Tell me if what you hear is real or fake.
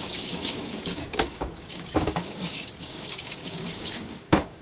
fake